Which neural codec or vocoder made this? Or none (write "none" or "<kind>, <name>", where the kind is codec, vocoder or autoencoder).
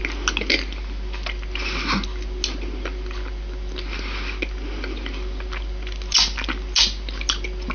none